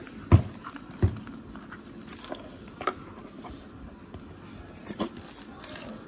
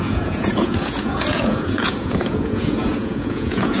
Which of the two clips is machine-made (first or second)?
second